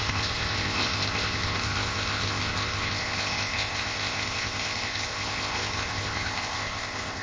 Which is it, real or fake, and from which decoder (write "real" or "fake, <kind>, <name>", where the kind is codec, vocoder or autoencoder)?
fake, codec, ZipCodec